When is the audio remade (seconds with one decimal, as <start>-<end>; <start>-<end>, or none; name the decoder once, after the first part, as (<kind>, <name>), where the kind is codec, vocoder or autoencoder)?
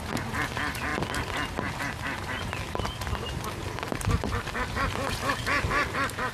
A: 3.6-4.2 (vocoder, BigVGAN v2)